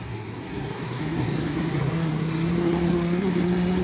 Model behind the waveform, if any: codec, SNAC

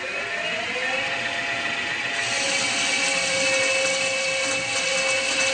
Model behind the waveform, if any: none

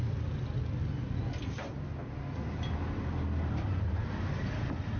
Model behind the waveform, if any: none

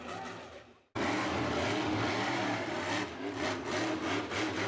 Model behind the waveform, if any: none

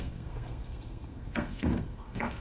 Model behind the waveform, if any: codec, SNAC